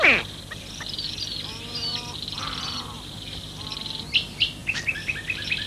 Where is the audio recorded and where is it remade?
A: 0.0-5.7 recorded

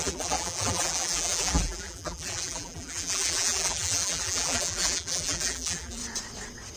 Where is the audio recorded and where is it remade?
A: 0.0-6.0 remade; 6.0-6.8 recorded

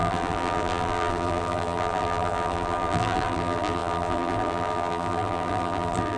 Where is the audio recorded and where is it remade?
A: 0.0-6.2 remade

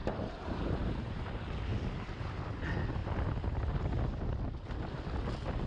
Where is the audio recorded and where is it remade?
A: 0.0-1.2 remade; 1.2-5.7 recorded

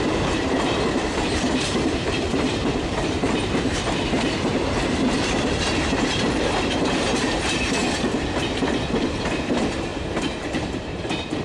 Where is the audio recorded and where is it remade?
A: 0.0-7.8 remade; 7.8-9.0 recorded; 9.0-9.9 remade; 9.9-10.7 recorded; 10.7-11.4 remade

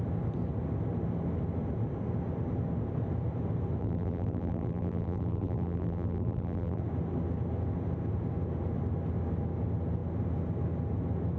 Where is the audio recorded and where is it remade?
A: 0.0-3.8 recorded; 3.8-6.8 remade; 6.8-11.4 recorded

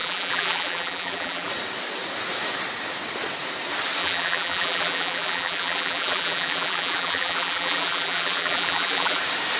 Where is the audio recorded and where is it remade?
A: 0.0-1.5 remade; 1.5-4.0 recorded; 4.0-9.2 remade; 9.2-9.6 recorded